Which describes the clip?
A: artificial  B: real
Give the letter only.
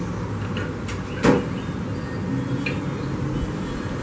B